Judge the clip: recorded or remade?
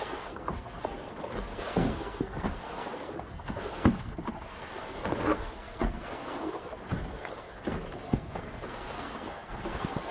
remade